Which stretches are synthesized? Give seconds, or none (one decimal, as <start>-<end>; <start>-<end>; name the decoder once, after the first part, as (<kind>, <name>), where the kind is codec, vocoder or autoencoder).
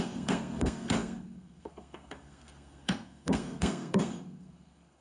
0.0-5.0 (codec, SNAC)